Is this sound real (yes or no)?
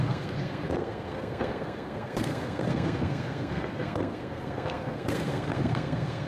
no